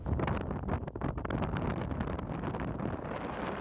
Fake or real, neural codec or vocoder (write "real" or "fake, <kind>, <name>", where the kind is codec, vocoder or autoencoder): real